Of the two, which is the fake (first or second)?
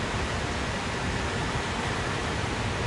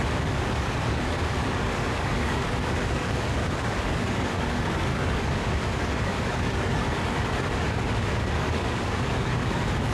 second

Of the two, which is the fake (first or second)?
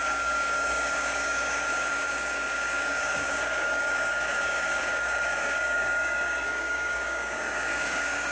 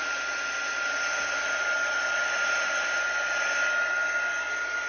first